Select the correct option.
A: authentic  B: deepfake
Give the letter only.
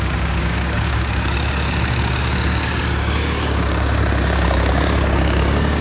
B